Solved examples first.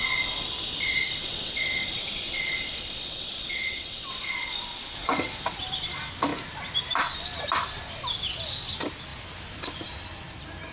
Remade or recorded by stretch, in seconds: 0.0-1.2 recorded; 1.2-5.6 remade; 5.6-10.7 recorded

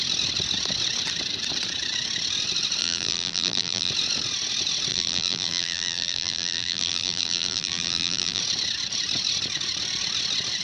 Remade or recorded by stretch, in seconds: 0.0-2.8 recorded; 2.8-3.9 remade; 3.9-4.9 recorded; 4.9-8.4 remade; 8.4-10.6 recorded